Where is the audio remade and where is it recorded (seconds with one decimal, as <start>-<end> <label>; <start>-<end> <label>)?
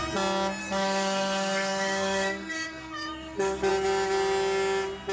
0.0-0.6 recorded; 0.6-3.7 remade; 3.7-5.1 recorded